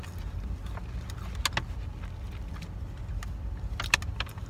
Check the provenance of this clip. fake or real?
real